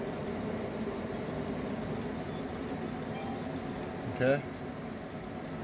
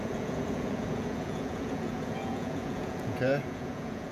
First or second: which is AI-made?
second